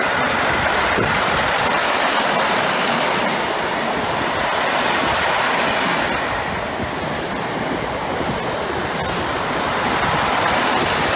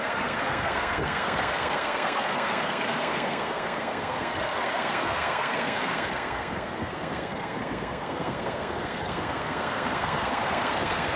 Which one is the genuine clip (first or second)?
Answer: first